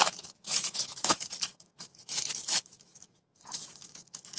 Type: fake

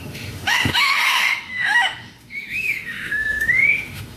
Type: fake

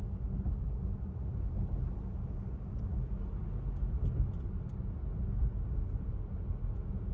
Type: real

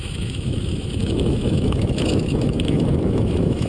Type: fake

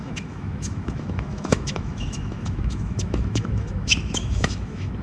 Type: fake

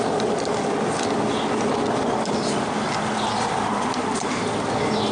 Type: real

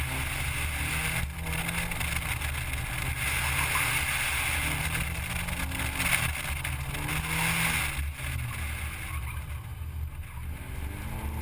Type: real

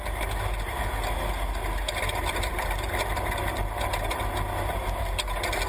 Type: real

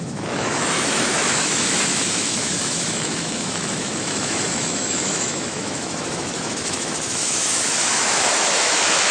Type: fake